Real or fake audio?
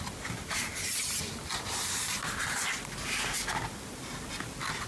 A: real